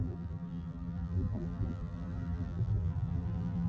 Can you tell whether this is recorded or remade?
remade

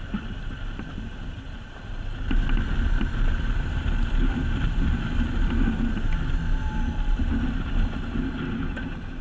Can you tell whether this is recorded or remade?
recorded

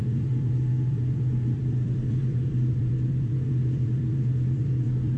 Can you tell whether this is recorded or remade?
remade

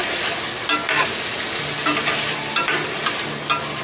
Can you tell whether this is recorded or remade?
recorded